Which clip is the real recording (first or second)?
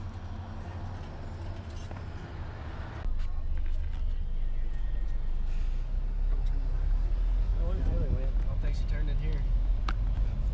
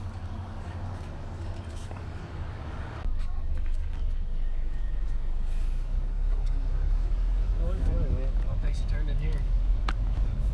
first